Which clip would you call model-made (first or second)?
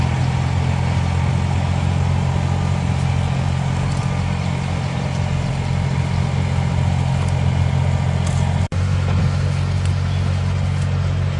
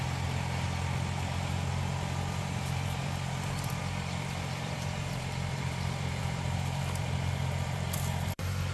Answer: second